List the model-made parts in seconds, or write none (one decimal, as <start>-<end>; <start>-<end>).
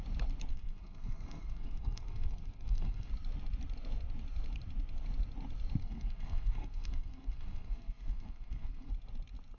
0.5-3.1; 5.8-8.9